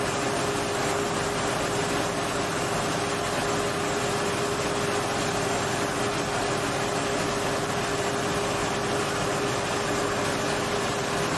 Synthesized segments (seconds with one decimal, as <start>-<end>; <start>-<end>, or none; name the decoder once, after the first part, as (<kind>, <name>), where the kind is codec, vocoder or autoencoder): none